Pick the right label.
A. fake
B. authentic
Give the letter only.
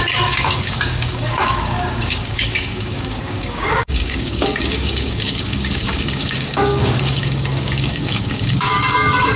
A